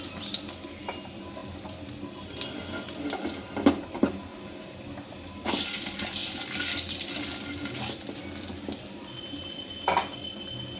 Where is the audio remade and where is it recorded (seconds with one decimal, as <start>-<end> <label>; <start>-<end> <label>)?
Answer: 0.0-10.8 recorded